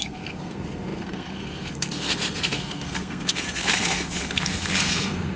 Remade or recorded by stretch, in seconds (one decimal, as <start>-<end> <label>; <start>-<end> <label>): 0.0-5.4 remade